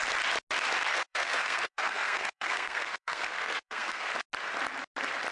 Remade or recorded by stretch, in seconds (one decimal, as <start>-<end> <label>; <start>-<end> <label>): 0.0-0.9 recorded; 0.9-4.1 remade; 4.1-5.3 recorded